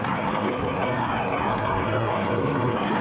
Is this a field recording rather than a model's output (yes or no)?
no